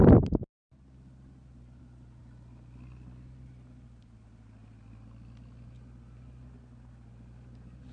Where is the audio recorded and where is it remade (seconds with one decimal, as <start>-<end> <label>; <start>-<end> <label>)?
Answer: 0.0-7.9 recorded